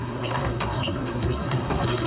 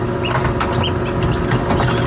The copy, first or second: first